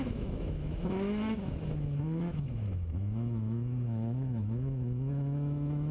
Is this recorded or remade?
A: remade